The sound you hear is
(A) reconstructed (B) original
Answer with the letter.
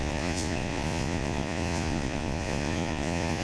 A